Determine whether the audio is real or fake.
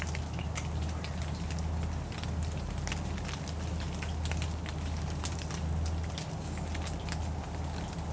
real